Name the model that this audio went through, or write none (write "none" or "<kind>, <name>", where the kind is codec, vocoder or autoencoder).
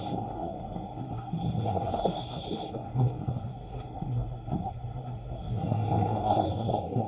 codec, SNAC